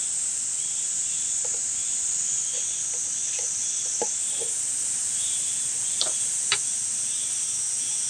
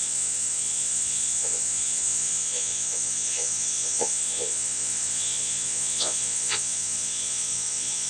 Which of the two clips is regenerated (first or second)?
second